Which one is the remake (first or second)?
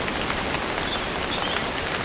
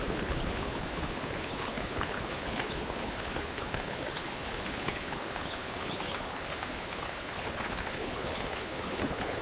second